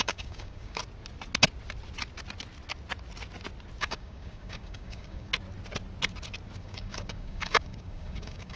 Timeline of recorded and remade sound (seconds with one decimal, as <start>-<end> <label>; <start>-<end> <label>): 0.0-0.8 remade; 0.8-3.8 recorded; 3.8-5.3 remade; 5.3-6.6 recorded; 6.6-8.6 remade